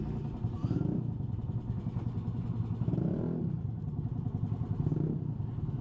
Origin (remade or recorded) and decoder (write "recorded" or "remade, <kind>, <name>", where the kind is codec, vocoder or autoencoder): recorded